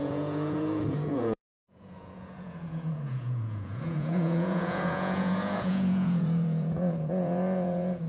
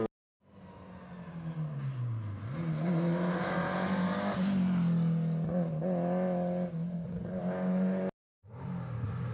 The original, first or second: second